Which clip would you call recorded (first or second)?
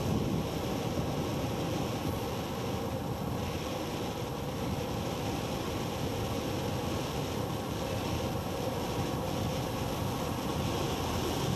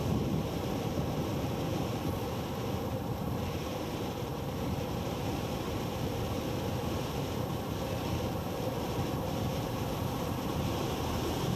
first